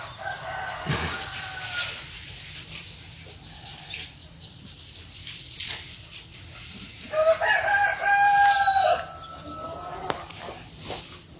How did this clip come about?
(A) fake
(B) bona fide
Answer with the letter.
B